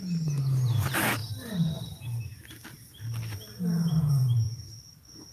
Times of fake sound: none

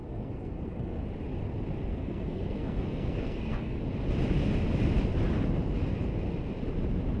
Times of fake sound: 0.0-1.0 (codec, SNAC); 1.9-3.8

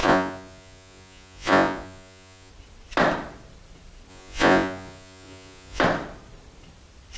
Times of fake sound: 0.0-2.5 (vocoder, Vocos); 4.1-5.8

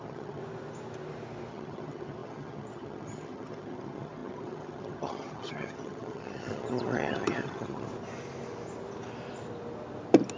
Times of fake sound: 0.0-0.4 (vocoder, HiFi-GAN); 1.5-7.9